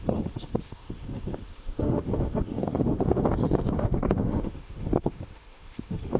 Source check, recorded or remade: remade